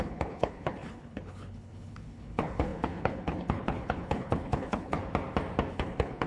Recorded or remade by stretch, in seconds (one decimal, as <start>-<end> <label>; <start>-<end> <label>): 0.0-5.0 remade; 5.0-5.7 recorded; 5.7-6.3 remade